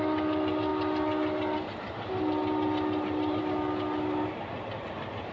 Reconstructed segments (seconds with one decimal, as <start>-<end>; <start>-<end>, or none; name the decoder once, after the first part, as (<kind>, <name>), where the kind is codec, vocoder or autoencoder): none